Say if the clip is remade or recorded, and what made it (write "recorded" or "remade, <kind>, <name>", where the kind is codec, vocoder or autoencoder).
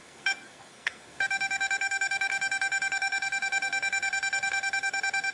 remade, codec, SNAC